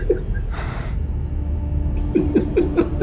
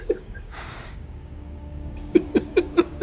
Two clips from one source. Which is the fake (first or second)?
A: second